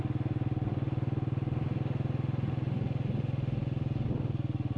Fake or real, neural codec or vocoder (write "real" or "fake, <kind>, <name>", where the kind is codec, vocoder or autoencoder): real